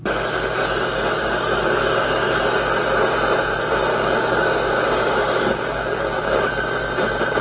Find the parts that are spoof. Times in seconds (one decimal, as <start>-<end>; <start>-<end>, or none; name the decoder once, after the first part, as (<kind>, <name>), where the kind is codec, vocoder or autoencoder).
1.2-2.4 (codec, DAC); 3.9-6.5